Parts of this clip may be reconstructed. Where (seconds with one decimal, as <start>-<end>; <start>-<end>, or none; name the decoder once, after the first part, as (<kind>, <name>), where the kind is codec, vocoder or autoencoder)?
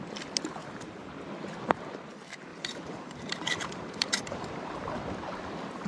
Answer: 0.6-1.1 (vocoder, BigVGAN v2); 2.5-5.0